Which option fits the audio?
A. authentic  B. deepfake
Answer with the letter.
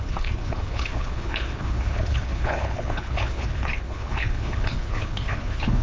B